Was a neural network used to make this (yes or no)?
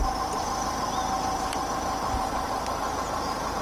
no